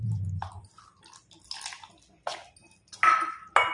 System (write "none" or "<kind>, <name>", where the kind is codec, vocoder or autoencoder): none